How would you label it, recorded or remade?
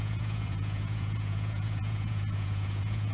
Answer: remade